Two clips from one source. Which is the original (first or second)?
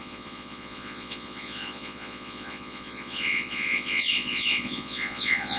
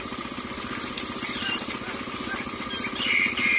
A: second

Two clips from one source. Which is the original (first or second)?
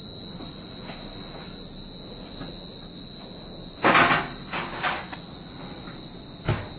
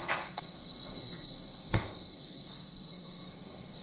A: first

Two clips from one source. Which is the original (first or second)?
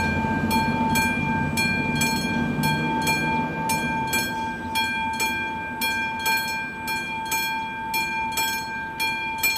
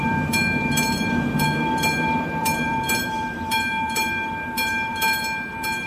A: first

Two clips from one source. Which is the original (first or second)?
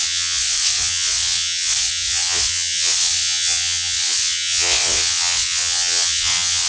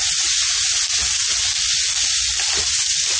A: second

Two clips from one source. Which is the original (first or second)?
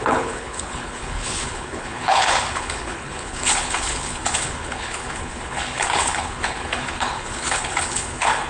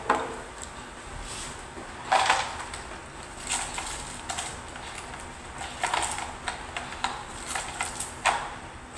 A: second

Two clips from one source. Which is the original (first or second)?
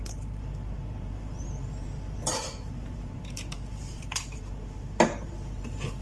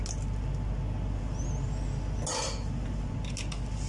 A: second